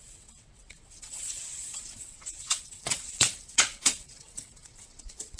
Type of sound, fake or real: fake